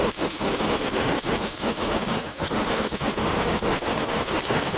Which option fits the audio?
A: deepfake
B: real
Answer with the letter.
A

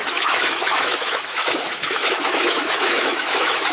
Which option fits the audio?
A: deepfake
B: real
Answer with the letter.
A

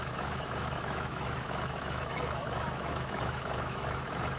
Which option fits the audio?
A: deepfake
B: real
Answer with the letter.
A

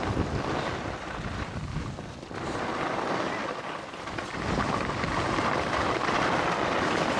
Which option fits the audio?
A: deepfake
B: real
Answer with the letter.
B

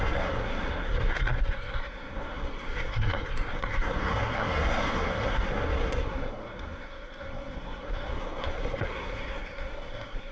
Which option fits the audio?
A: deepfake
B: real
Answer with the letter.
A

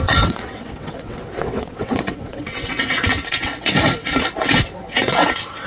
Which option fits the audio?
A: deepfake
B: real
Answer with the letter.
A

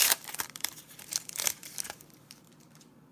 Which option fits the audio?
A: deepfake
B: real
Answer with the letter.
A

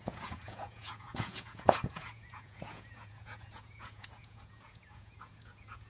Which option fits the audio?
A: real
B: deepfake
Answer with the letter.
B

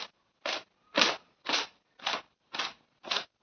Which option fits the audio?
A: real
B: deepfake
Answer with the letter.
A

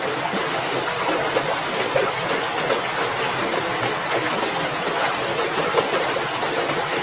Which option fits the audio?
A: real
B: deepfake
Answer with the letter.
A